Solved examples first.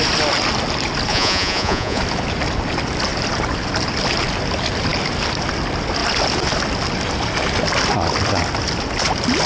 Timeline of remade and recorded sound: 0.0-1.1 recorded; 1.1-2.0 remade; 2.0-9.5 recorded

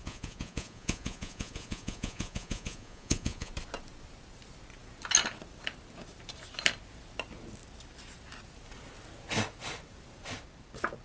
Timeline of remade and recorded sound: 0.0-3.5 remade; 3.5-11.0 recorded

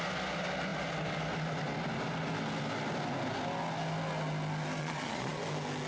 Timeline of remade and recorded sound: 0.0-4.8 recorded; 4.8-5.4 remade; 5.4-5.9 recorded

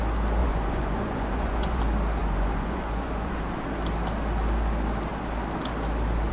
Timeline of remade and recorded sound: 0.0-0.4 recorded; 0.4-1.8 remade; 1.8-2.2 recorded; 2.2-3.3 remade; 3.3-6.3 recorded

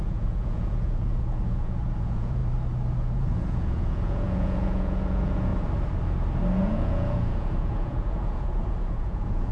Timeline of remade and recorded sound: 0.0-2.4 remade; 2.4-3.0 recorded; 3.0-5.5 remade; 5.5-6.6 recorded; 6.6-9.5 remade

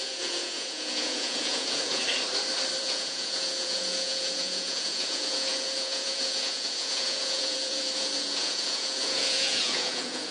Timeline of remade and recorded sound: 0.0-2.0 remade; 2.0-2.8 recorded; 2.8-10.3 remade

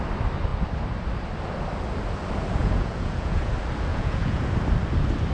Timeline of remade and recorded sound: 0.0-2.6 recorded; 2.6-3.5 remade; 3.5-3.9 recorded; 3.9-4.4 remade; 4.4-5.3 recorded